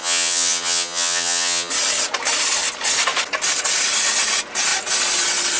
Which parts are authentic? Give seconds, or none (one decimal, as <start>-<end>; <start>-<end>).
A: 1.7-5.6